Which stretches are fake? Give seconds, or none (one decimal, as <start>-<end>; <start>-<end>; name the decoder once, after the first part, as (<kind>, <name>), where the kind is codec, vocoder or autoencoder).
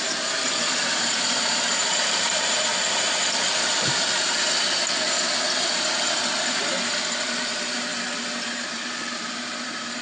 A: 0.0-2.7 (vocoder, BigVGAN v2); 3.7-6.6; 7.5-7.9; 8.5-10.0